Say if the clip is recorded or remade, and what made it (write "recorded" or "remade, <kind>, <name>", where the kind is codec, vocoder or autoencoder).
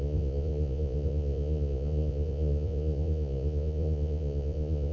remade, vocoder, Vocos